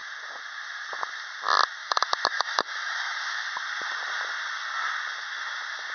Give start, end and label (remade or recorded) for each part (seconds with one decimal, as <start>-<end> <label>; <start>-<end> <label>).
0.0-1.8 recorded; 1.8-3.5 remade; 3.5-5.9 recorded